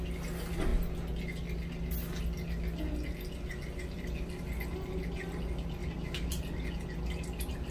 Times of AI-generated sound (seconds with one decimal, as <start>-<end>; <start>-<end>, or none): 5.8-6.4